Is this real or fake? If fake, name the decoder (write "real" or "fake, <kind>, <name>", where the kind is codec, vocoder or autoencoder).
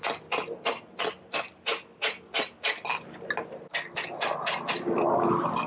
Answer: real